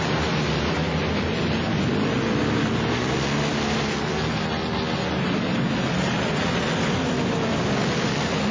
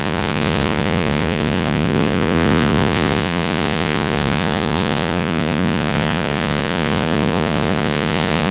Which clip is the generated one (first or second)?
second